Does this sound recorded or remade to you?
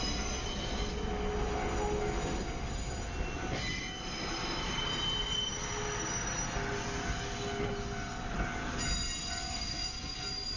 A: recorded